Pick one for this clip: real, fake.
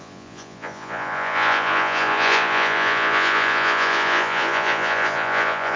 fake